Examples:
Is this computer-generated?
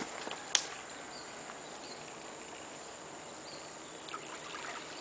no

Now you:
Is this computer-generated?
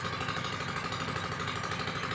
no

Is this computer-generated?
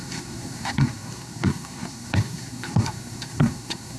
yes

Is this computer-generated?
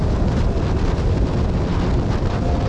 no